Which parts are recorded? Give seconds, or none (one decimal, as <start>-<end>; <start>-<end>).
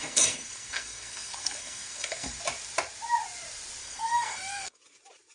2.4-3.8; 4.8-5.3